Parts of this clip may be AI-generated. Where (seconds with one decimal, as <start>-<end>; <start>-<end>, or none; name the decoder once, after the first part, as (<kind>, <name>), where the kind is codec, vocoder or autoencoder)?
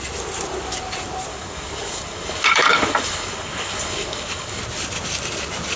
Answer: 1.3-4.6 (codec, DAC)